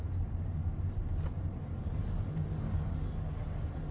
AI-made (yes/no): no